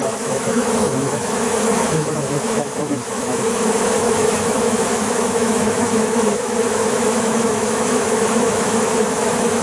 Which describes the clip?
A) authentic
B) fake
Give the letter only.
B